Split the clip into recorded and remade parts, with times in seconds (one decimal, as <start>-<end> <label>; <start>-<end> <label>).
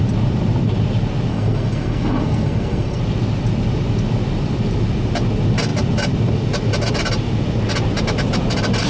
0.0-1.3 recorded; 1.3-3.0 remade; 3.0-8.9 recorded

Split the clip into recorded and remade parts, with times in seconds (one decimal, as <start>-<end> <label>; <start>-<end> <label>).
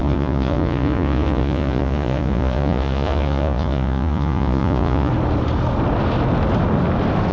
0.0-5.1 remade; 5.1-7.3 recorded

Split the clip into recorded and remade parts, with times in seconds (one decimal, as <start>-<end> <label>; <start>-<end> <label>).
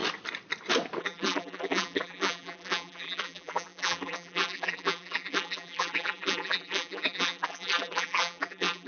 0.0-1.0 recorded; 1.0-8.9 remade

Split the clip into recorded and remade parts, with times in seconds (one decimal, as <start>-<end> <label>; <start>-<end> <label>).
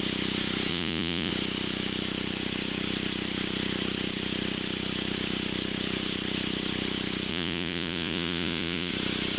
0.0-0.7 recorded; 0.7-1.3 remade; 1.3-7.3 recorded; 7.3-8.9 remade; 8.9-9.4 recorded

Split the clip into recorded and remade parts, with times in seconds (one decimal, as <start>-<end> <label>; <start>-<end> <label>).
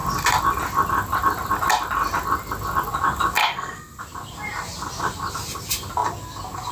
0.0-3.4 recorded; 3.4-4.0 remade; 4.0-6.7 recorded